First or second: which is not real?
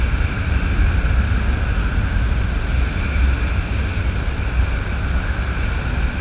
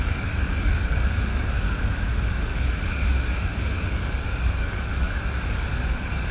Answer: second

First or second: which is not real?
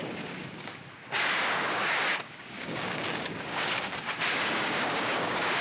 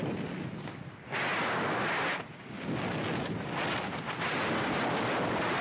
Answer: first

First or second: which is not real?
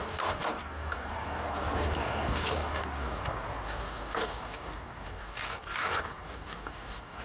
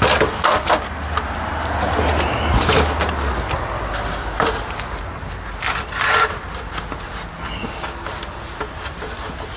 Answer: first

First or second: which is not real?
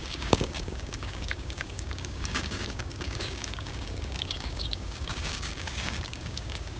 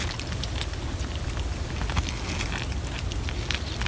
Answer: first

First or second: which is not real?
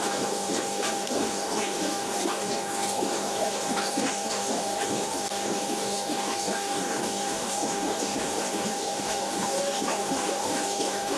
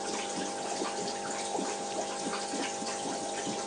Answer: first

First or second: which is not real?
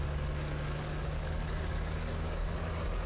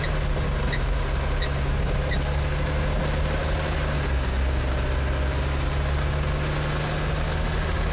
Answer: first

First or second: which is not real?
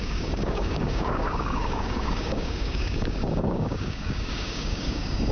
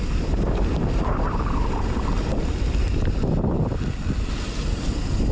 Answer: first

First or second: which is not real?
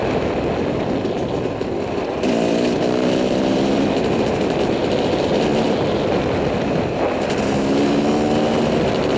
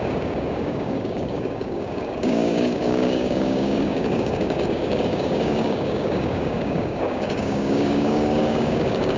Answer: second